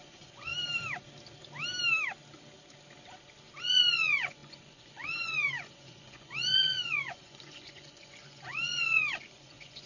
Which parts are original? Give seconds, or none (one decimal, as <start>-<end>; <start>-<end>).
0.5-3.6